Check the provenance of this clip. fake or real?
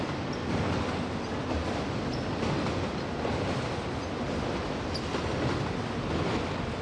real